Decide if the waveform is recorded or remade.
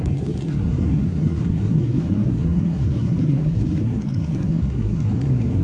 remade